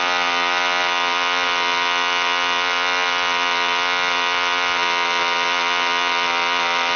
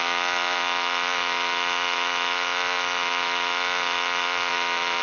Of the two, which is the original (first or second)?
first